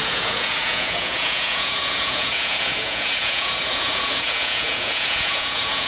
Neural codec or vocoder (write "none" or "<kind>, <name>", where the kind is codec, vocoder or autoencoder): vocoder, Vocos